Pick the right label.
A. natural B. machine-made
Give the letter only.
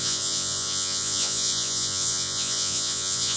B